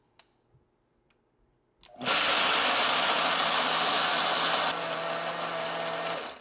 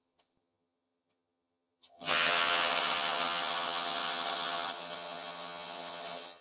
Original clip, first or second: first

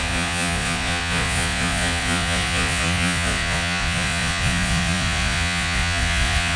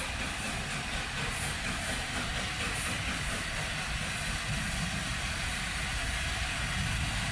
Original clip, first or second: second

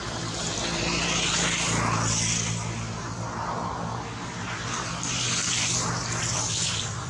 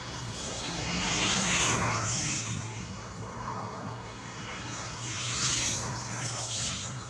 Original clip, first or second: first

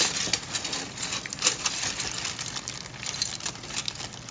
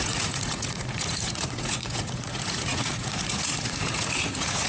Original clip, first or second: first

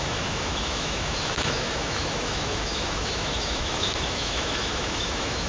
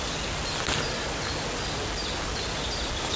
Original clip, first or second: second